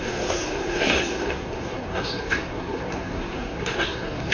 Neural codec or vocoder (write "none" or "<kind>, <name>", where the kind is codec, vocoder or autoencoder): codec, SNAC